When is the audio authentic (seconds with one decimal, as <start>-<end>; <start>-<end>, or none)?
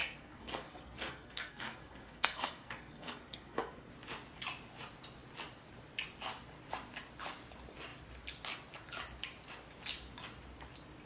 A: 3.9-11.1